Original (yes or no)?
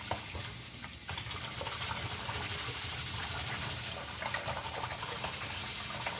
yes